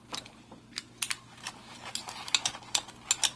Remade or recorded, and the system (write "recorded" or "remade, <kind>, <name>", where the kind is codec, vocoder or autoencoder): recorded